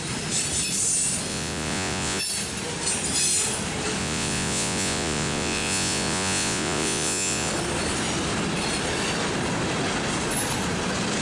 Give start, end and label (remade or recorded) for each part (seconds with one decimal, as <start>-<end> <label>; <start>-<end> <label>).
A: 0.0-1.3 recorded; 1.3-2.2 remade; 2.2-4.0 recorded; 4.0-7.5 remade; 7.5-11.2 recorded